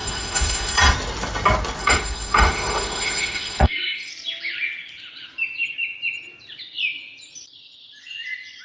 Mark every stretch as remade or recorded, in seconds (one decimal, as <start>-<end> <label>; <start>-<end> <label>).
0.0-0.8 remade; 0.8-1.8 recorded; 1.8-4.1 remade; 4.1-8.6 recorded